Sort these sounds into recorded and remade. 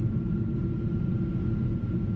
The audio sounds recorded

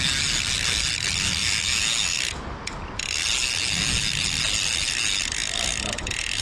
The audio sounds recorded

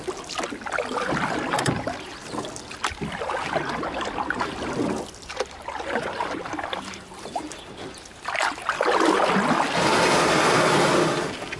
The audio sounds recorded